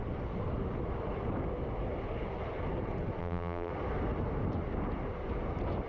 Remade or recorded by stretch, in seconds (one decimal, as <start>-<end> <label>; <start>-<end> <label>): 0.0-3.2 recorded; 3.2-3.7 remade; 3.7-5.9 recorded